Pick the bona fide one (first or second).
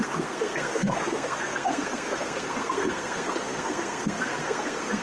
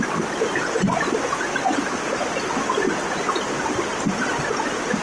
second